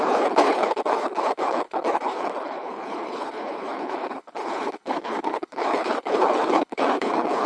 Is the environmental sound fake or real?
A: fake